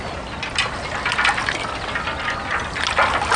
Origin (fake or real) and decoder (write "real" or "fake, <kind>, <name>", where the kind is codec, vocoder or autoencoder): real